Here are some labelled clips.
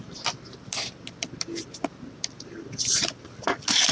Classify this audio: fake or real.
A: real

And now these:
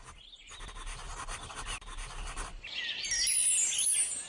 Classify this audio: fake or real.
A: real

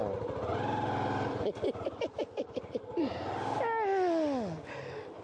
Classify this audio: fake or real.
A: real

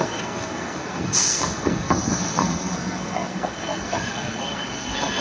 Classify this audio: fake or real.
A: fake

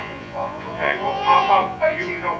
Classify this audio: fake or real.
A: fake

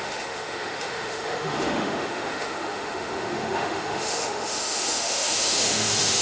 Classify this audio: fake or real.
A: fake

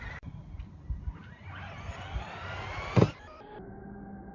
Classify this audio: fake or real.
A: real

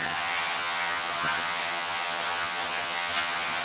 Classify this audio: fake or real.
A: fake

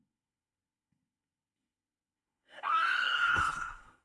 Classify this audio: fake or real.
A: fake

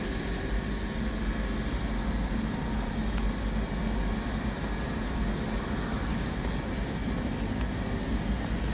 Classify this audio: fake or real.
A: real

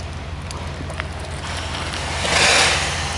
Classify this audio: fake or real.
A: real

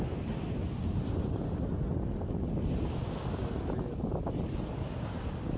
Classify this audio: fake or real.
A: real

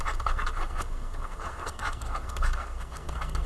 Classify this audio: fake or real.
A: fake